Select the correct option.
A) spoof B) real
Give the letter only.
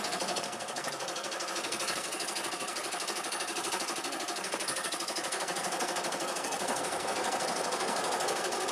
A